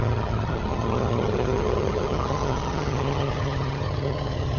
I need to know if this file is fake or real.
fake